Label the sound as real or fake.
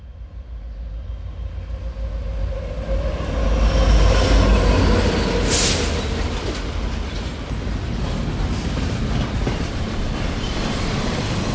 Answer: real